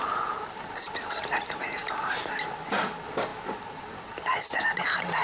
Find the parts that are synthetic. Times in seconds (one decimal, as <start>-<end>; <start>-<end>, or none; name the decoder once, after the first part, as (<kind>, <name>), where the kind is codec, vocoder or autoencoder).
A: none